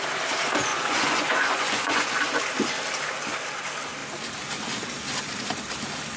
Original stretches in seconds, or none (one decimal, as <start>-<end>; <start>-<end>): 0.0-0.7; 2.2-6.2